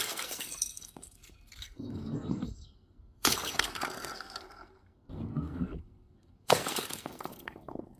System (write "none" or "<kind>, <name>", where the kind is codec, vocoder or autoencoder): codec, SNAC